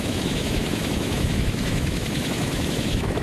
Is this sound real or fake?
fake